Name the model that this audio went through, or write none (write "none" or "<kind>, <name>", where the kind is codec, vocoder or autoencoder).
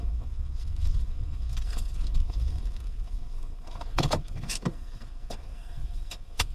codec, SNAC